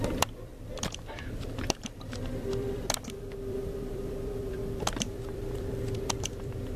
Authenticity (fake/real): fake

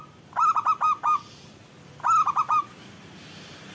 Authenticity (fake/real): real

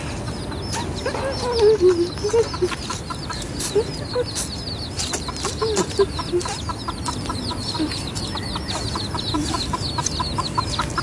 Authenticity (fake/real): real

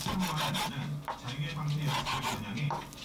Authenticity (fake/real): real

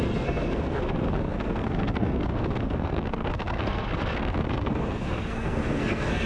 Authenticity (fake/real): fake